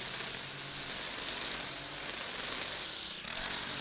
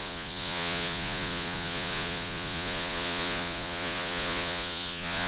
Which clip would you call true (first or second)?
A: first